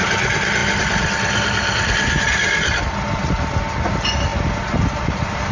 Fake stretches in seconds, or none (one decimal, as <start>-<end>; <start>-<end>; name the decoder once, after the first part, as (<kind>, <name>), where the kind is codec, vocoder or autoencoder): none